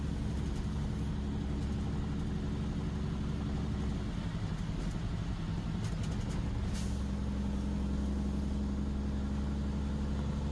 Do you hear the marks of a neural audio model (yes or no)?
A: no